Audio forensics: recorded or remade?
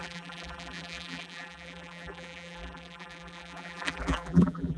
remade